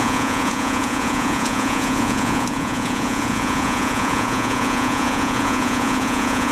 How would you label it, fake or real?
fake